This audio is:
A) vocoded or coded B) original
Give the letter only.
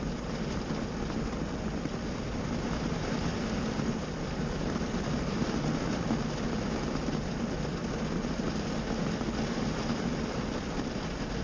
B